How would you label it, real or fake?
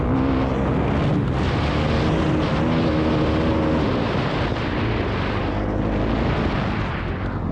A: real